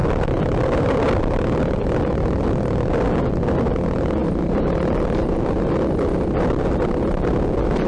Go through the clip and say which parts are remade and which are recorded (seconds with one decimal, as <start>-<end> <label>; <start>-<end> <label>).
0.0-7.9 recorded

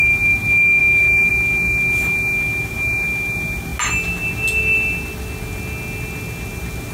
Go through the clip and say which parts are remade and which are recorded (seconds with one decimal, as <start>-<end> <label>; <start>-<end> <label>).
0.0-0.8 recorded; 0.8-1.3 remade; 1.3-6.9 recorded

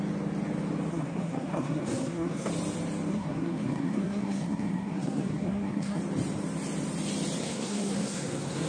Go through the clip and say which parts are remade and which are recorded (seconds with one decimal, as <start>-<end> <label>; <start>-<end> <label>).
0.0-0.9 recorded; 0.9-2.5 remade; 2.5-3.1 recorded; 3.1-6.0 remade; 6.0-7.4 recorded; 7.4-8.7 remade